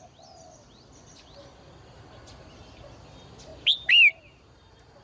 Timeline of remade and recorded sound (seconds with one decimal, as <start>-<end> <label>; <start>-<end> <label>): 0.0-5.0 recorded